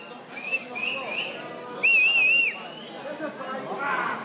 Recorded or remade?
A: recorded